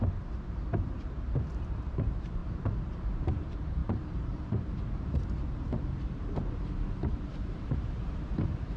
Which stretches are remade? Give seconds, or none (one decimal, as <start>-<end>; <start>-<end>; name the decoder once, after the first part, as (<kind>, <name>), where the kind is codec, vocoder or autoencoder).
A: 0.0-6.4 (vocoder, BigVGAN v2); 7.5-8.8